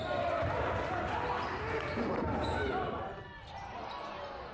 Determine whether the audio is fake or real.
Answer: real